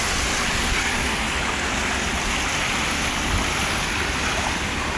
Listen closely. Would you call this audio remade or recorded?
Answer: recorded